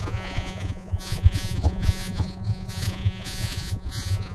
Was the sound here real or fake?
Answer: fake